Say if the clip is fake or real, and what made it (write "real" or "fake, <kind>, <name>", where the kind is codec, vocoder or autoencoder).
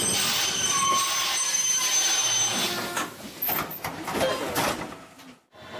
real